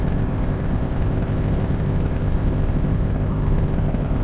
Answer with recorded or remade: remade